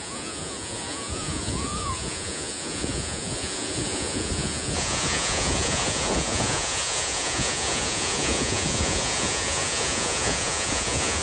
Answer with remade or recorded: remade